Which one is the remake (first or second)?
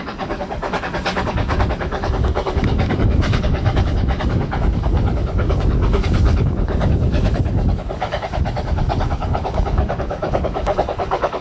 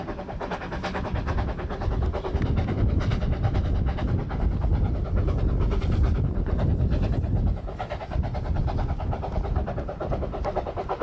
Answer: first